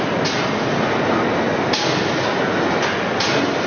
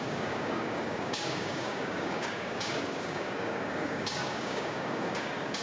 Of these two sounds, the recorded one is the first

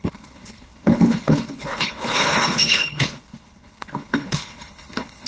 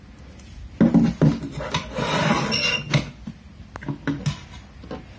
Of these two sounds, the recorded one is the second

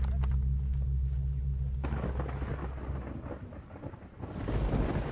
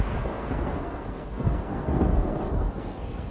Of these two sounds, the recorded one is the first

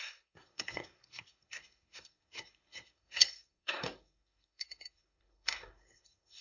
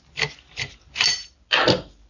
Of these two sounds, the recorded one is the second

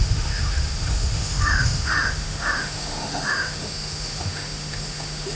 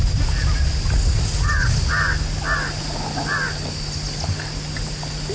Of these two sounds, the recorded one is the second